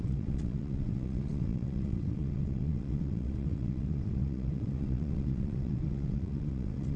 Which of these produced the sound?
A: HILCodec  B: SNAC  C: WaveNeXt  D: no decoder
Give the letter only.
C